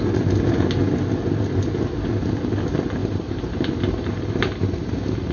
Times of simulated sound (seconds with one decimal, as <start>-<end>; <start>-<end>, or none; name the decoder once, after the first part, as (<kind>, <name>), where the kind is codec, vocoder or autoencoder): 3.0-5.3 (vocoder, BigVGAN v2)